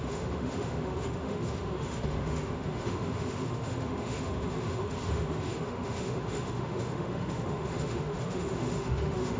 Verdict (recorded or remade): remade